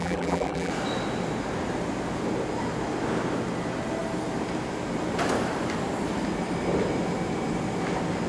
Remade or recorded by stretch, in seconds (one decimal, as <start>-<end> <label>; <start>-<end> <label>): 0.0-0.7 remade; 0.7-8.3 recorded